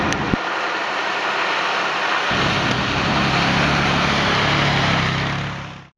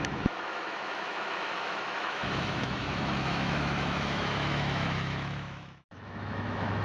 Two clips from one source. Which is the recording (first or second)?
first